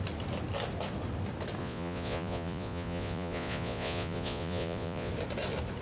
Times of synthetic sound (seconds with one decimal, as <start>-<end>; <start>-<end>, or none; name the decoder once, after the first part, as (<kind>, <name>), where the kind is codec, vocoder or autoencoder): 1.6-5.1 (vocoder, Vocos)